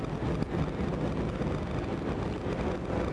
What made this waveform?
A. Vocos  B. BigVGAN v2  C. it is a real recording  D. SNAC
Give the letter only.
C